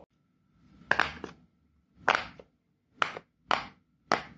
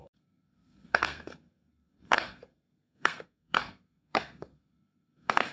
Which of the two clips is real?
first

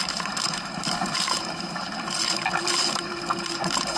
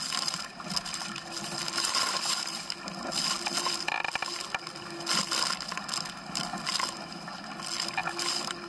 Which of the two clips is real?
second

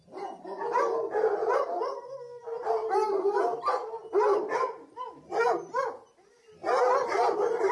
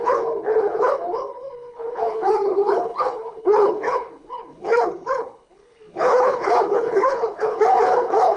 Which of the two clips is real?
first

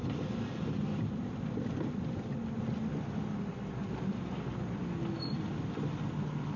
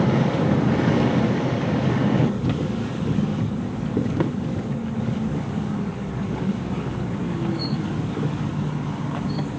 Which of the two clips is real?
first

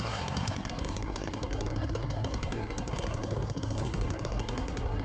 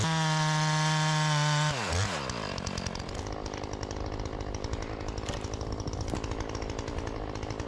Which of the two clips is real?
second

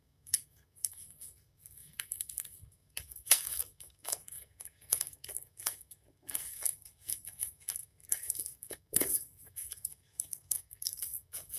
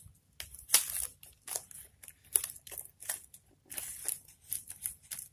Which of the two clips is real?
second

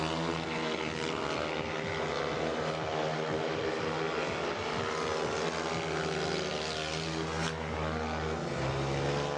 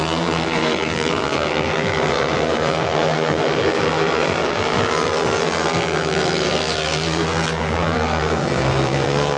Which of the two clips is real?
first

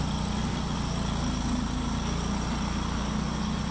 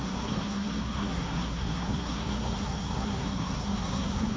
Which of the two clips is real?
first